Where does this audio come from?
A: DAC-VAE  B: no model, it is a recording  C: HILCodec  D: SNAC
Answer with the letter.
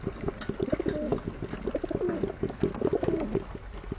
B